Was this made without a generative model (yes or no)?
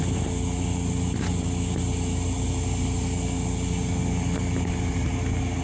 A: yes